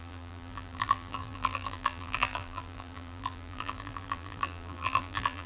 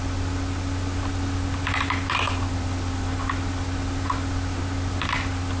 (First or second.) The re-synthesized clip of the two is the first